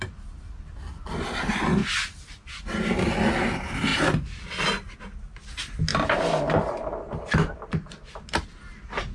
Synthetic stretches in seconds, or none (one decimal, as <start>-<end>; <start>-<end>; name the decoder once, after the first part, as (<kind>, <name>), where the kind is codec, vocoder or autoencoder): none